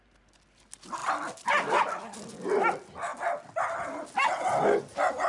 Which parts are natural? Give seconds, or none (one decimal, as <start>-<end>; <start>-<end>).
0.0-1.0; 1.8-3.1; 3.7-5.3